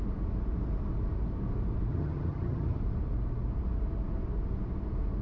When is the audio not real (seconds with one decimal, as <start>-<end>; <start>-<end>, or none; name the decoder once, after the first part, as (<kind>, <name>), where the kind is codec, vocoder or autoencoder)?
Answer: 1.9-2.8 (vocoder, HiFi-GAN)